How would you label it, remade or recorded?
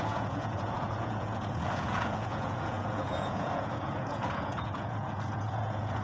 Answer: remade